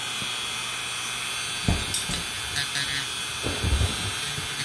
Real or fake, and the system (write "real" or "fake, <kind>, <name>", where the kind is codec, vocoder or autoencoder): real